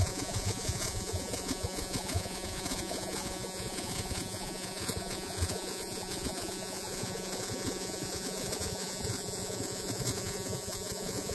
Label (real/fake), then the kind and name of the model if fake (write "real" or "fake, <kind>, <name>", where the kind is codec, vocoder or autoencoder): fake, vocoder, Vocos